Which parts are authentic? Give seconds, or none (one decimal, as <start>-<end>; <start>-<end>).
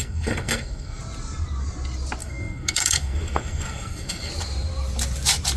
1.0-2.2; 4.3-5.6